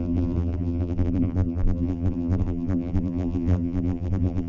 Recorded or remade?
remade